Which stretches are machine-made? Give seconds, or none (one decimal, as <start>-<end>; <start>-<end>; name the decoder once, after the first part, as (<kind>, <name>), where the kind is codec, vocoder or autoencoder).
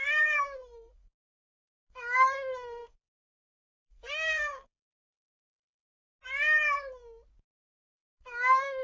0.0-5.9 (codec, SNAC); 8.1-8.8